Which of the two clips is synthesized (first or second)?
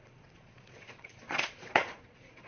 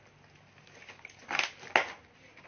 first